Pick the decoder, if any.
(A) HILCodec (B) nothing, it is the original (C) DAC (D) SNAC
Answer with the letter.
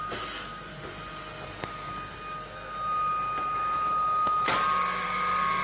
B